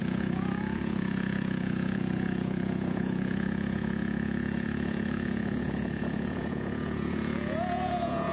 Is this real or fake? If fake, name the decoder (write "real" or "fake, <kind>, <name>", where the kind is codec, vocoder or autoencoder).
fake, vocoder, Vocos